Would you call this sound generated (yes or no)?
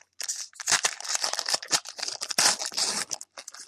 no